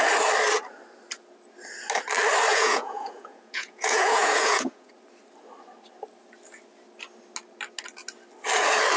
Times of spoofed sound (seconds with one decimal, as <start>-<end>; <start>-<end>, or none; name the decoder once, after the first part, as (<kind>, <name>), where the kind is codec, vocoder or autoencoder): 2.5-4.9 (vocoder, Vocos)